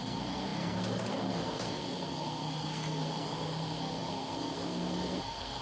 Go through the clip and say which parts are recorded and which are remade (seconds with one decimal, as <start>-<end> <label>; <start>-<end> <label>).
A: 0.0-5.6 remade